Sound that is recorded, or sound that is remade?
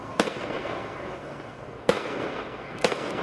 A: remade